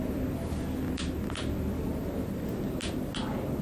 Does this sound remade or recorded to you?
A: recorded